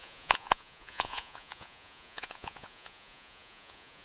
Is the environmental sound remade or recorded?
remade